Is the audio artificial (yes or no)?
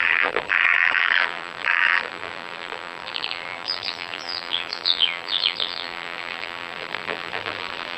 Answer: yes